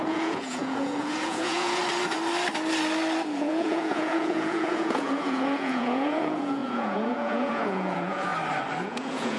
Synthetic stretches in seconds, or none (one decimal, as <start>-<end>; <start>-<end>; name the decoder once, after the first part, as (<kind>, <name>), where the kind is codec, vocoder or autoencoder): 0.0-1.8 (vocoder, Vocos); 3.3-8.3; 8.8-9.4

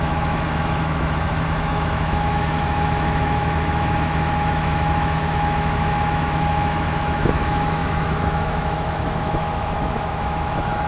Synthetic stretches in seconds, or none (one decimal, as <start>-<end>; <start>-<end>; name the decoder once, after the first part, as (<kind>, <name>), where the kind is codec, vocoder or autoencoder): 0.0-10.9 (autoencoder, DAC-VAE)

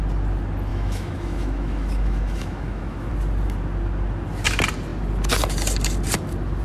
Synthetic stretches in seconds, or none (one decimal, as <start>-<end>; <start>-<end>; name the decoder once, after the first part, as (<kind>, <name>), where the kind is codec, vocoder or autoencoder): 0.7-3.1 (autoencoder, DAC-VAE)

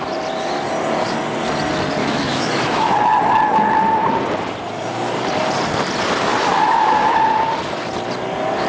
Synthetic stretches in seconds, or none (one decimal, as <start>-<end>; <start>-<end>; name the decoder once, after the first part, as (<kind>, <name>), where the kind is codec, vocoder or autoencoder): 2.0-3.0 (autoencoder, DAC-VAE)

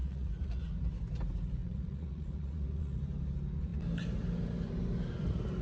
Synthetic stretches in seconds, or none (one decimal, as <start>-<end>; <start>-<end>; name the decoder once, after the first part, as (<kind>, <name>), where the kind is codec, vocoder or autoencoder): 0.0-0.6 (vocoder, Vocos); 1.6-3.0

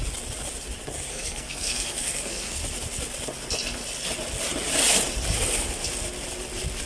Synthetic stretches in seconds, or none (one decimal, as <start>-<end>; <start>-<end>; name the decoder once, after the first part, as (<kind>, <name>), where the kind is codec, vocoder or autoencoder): 1.1-2.6 (codec, SNAC)

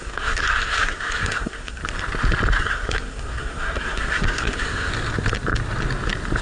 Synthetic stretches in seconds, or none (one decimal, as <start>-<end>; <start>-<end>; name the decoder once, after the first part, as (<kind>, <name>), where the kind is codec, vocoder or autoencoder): 0.0-1.8 (codec, SNAC); 2.6-4.9